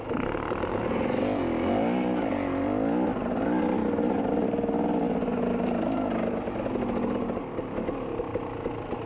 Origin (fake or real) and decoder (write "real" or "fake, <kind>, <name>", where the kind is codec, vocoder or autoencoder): real